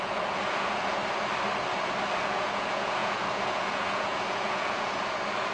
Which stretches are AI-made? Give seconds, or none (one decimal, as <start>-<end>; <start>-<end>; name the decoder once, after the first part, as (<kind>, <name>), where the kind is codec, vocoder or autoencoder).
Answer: 0.0-1.0 (vocoder, Vocos); 2.2-5.5